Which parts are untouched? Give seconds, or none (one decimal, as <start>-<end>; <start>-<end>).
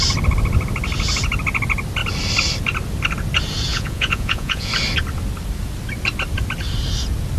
0.0-3.7; 4.7-7.4